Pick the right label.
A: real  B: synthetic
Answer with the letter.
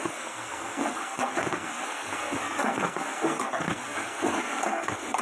B